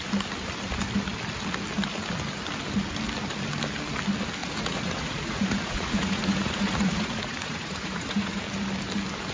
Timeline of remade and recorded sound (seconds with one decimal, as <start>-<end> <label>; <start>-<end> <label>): 0.0-4.4 recorded; 4.4-8.4 remade; 8.4-9.3 recorded